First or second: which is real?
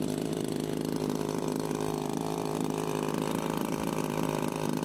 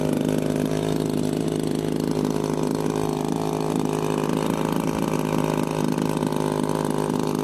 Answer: second